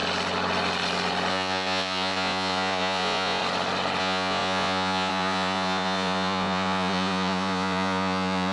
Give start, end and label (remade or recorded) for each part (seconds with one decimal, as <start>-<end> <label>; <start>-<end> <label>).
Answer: 0.0-1.3 recorded; 1.3-3.4 remade; 3.4-4.0 recorded; 4.0-8.5 remade